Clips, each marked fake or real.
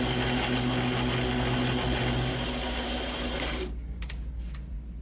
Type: real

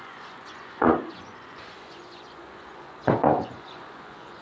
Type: fake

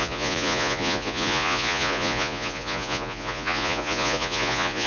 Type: fake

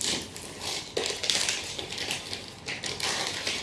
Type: real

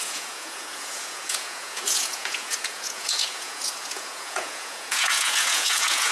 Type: fake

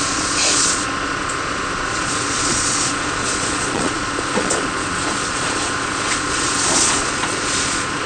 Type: fake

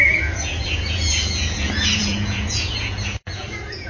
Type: fake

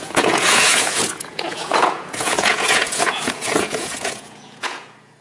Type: fake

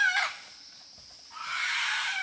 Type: real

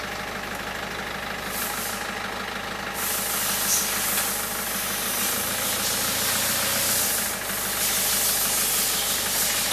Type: real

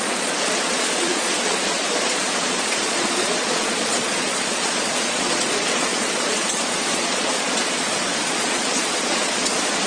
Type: fake